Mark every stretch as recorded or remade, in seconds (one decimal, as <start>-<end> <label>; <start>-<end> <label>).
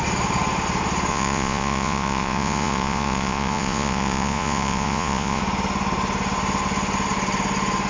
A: 0.0-1.1 recorded; 1.1-5.4 remade; 5.4-7.9 recorded